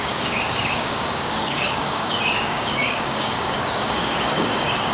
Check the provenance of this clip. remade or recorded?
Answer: remade